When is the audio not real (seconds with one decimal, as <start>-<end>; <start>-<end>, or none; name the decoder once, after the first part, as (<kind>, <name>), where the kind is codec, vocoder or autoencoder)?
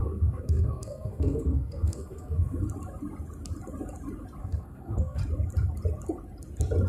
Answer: 0.0-2.6 (codec, SNAC); 4.4-5.2